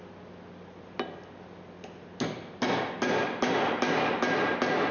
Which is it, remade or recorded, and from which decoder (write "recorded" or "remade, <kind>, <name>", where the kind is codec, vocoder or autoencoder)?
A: recorded